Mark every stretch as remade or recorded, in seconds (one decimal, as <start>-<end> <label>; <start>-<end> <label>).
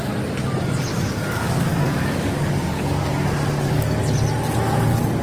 0.0-0.9 recorded; 0.9-4.0 remade; 4.0-5.2 recorded